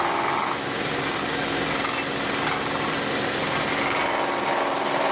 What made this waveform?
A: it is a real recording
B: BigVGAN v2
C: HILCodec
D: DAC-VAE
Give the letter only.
A